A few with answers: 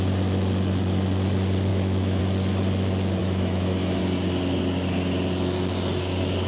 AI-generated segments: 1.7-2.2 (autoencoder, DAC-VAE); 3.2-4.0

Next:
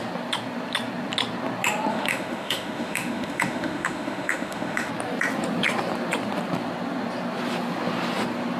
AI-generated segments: 1.9-4.9 (autoencoder, DAC-VAE)

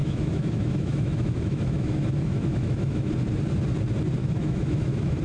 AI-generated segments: 0.0-3.1 (autoencoder, DAC-VAE); 4.2-5.2

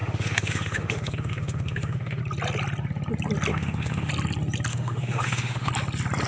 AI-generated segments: 0.0-2.2 (autoencoder, DAC-VAE); 3.5-4.1; 4.7-5.7

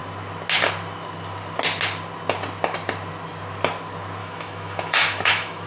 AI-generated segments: 4.2-5.7 (autoencoder, DAC-VAE)